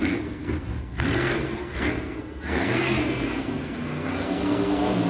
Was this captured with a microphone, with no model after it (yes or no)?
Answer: no